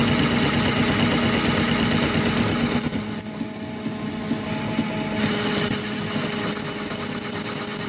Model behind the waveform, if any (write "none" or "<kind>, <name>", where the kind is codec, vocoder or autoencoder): none